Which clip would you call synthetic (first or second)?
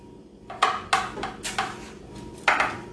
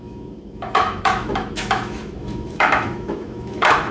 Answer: second